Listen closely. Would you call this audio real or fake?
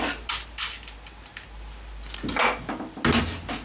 real